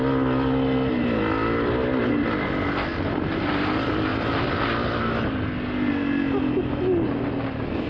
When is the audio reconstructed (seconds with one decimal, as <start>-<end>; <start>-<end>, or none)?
none